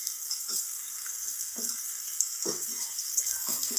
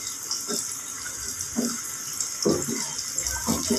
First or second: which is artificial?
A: first